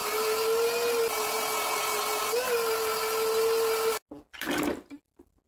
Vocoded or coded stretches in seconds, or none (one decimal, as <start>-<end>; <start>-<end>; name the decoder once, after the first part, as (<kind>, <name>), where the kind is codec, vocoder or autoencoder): none